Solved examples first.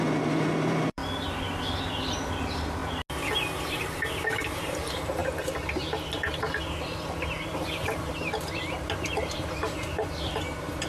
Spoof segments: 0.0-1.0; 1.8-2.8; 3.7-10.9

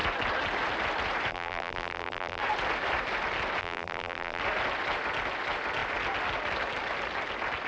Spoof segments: 1.3-2.4; 3.6-4.4

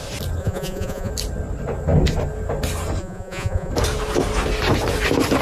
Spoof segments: 0.4-1.1; 3.0-3.7

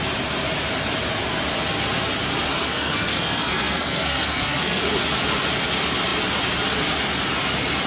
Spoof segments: 2.5-4.8

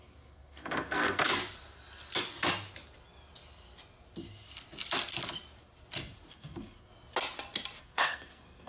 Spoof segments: 0.0-1.3; 6.3-6.9; 7.8-8.7

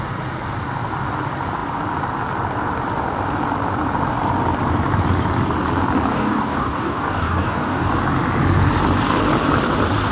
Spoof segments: 6.1-7.9

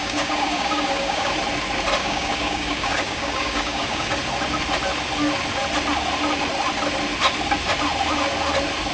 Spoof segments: 0.0-1.3; 2.0-4.1